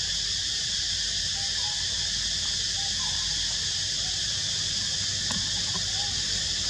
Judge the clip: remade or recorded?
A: recorded